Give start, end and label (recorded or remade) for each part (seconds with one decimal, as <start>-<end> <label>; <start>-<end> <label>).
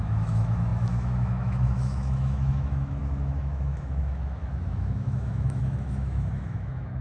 0.0-7.0 remade